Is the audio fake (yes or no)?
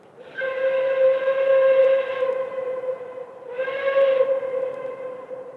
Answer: yes